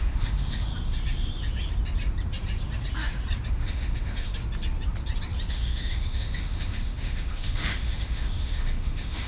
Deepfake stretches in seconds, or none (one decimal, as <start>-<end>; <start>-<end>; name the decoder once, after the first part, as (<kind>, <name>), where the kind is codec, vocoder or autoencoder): 0.0-0.7 (autoencoder, DAC-VAE); 3.5-4.3; 5.5-9.3